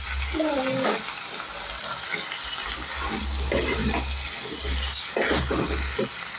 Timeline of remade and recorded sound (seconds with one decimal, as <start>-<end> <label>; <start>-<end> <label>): 0.0-6.4 recorded